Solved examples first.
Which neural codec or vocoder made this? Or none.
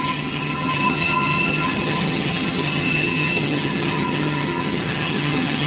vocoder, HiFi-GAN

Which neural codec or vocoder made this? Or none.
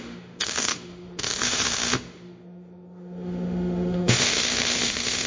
autoencoder, DAC-VAE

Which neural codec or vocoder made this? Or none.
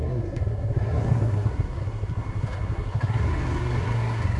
codec, SNAC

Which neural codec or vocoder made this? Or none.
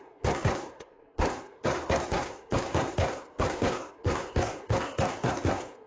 codec, SNAC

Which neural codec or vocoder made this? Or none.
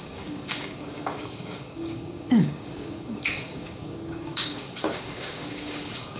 codec, DAC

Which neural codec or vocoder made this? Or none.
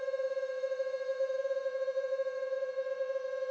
vocoder, Vocos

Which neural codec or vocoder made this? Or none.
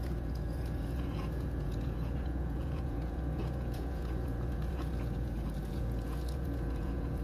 vocoder, Vocos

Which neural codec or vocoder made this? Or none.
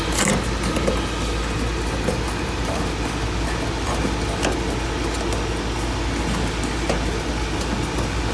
none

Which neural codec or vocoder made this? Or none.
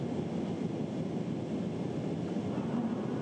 none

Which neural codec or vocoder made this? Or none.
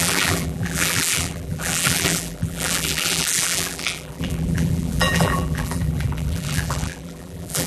vocoder, BigVGAN v2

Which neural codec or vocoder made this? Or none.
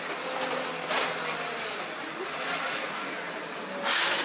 none